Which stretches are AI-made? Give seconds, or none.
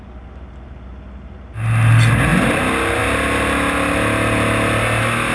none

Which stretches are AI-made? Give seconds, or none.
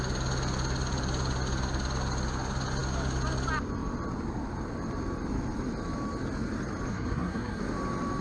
6.9-7.6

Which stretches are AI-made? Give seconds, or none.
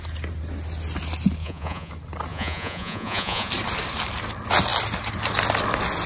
1.4-1.9; 2.3-3.5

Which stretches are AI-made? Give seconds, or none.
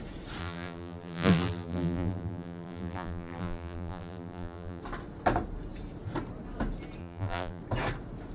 0.4-4.8; 7.0-7.6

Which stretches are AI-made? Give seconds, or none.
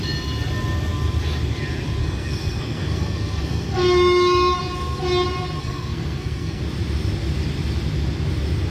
2.0-4.6; 5.6-6.6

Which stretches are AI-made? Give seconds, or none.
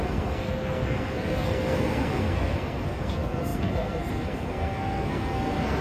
0.0-5.8